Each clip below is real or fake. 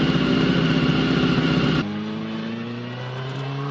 real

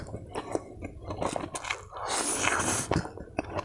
real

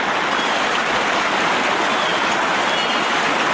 real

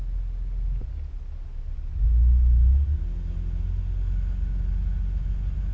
real